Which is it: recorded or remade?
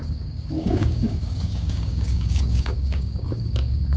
remade